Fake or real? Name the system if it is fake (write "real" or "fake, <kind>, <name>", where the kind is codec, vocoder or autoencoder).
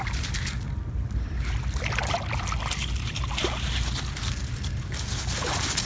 real